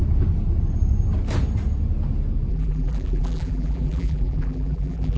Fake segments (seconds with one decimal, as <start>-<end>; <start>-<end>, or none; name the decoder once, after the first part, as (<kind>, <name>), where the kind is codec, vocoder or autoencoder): 2.5-5.2 (vocoder, BigVGAN v2)